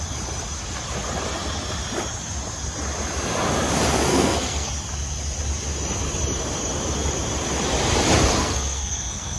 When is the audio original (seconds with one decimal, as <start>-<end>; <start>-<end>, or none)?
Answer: 0.0-4.1; 4.7-8.4